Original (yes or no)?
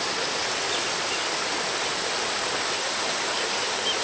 yes